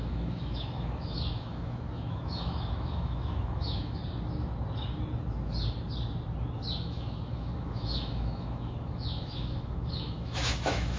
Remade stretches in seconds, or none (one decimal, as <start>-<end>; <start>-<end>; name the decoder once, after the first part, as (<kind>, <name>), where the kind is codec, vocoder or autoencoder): 0.0-4.0 (autoencoder, DAC-VAE); 6.8-11.0